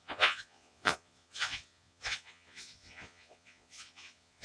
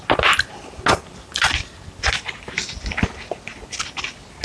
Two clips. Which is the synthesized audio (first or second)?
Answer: first